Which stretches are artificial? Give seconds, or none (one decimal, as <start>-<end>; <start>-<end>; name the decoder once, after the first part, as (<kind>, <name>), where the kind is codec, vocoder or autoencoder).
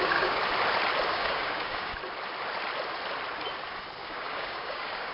0.0-0.4 (codec, DAC); 1.1-1.9; 4.0-5.1